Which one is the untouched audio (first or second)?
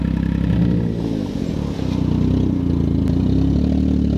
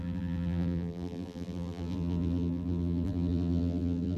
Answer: first